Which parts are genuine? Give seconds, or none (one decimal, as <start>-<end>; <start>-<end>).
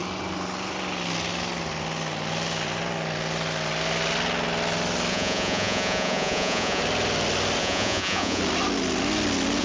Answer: 0.0-5.1; 6.8-7.6; 8.4-9.6